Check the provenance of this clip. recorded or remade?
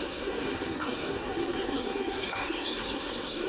remade